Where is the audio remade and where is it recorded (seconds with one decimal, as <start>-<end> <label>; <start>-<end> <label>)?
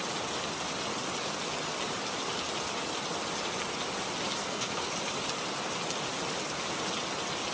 0.0-4.4 recorded; 4.4-4.9 remade; 4.9-7.5 recorded